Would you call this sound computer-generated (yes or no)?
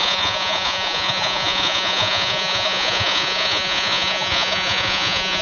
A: yes